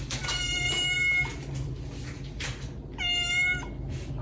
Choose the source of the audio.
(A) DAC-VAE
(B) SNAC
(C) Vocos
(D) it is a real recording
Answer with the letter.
D